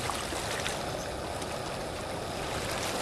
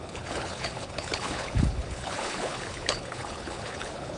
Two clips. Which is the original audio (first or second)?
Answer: first